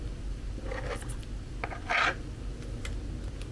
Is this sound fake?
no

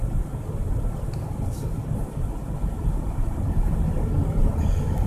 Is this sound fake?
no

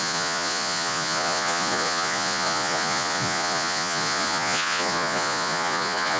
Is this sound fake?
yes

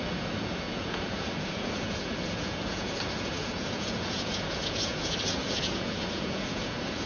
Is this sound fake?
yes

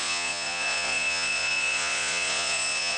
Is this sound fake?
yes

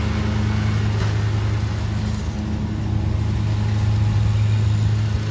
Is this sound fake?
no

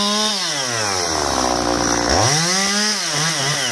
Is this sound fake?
no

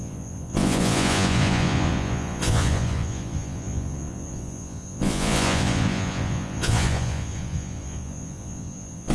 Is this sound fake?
yes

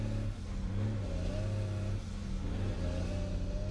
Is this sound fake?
no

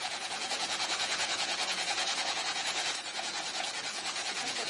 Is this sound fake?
yes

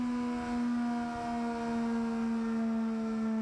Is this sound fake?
no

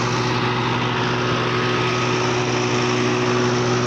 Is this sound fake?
no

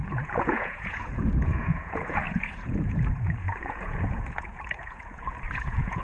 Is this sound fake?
yes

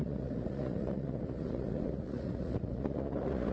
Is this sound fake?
yes